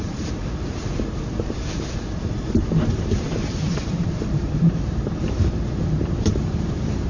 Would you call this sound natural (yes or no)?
no